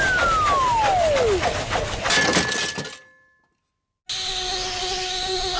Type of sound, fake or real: real